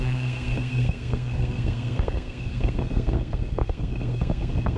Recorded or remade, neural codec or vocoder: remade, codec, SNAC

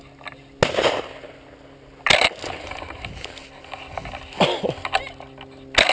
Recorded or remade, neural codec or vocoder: recorded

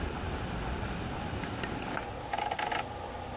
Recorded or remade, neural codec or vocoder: recorded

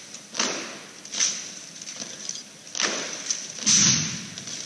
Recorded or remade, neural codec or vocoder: recorded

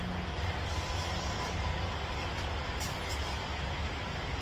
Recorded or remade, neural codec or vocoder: recorded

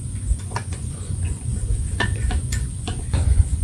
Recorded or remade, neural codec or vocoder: remade, vocoder, Vocos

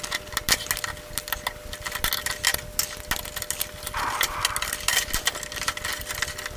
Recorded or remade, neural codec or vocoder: recorded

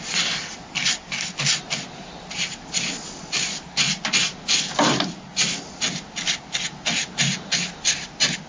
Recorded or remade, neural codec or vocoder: recorded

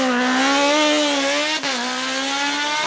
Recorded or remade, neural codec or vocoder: recorded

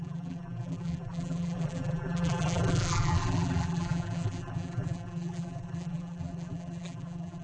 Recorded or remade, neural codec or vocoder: remade, vocoder, BigVGAN v2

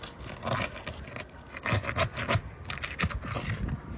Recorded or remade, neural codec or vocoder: recorded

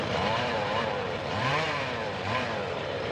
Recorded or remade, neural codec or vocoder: remade, vocoder, BigVGAN v2